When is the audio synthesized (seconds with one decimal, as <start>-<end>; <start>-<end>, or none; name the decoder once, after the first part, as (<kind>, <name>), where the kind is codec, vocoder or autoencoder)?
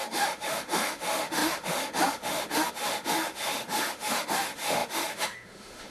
0.0-5.9 (autoencoder, DAC-VAE)